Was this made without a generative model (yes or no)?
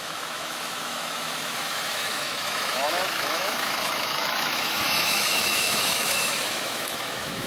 no